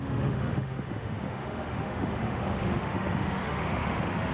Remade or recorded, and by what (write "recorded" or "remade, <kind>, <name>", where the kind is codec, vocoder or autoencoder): remade, autoencoder, DAC-VAE